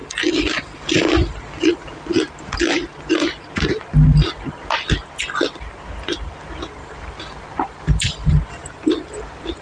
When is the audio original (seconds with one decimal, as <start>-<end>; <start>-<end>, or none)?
0.0-6.8; 8.3-9.6